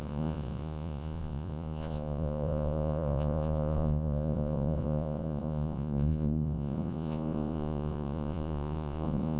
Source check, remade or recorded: remade